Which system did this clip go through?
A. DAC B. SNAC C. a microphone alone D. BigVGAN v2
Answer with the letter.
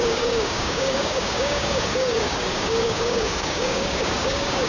A